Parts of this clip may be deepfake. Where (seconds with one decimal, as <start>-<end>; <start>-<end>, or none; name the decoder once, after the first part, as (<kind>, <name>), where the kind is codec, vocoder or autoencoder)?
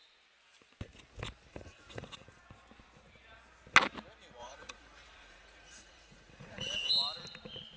1.5-2.4 (vocoder, Vocos); 4.4-6.9